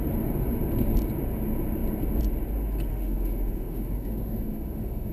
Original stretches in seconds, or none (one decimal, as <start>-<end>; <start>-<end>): 0.0-2.9